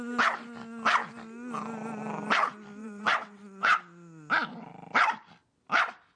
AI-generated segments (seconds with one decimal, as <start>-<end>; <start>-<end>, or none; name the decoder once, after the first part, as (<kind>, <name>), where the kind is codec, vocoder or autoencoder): 2.8-3.8 (vocoder, WaveNeXt)